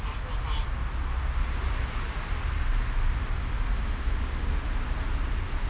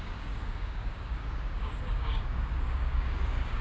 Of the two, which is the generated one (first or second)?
second